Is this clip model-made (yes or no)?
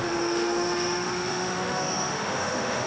yes